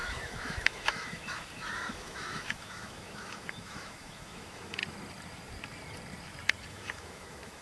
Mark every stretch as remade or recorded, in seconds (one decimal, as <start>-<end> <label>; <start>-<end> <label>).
0.0-4.8 remade; 4.8-6.7 recorded; 6.7-7.6 remade